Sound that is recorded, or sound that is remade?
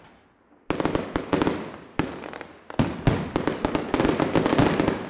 recorded